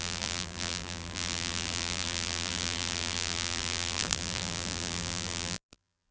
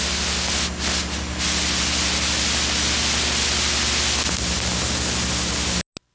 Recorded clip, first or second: second